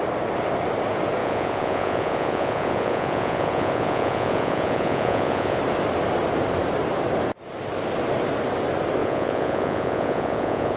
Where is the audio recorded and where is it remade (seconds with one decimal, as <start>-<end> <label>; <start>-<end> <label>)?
0.0-1.2 recorded; 1.2-5.6 remade; 5.6-9.0 recorded; 9.0-10.8 remade